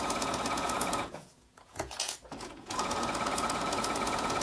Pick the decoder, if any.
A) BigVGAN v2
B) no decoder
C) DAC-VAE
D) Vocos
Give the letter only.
D